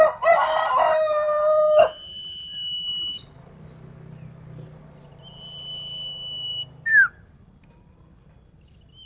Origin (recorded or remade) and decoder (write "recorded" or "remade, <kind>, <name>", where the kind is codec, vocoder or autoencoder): recorded